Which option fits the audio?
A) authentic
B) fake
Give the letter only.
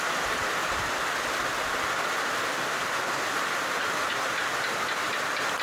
A